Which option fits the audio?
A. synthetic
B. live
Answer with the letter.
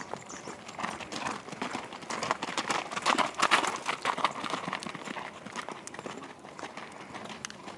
B